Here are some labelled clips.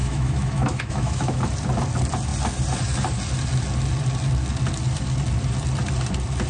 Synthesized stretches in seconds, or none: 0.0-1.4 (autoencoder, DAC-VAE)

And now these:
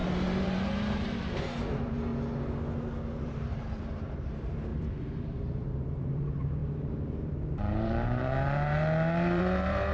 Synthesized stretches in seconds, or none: 0.0-2.1 (vocoder, BigVGAN v2); 3.2-9.9

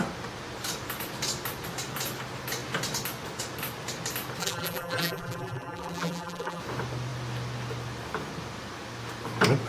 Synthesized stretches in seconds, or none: 4.4-6.6 (vocoder, BigVGAN v2)